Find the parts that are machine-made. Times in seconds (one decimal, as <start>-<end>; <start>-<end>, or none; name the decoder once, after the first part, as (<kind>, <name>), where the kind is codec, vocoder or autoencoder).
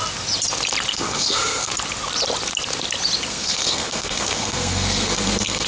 0.9-1.7 (codec, SNAC); 3.3-5.7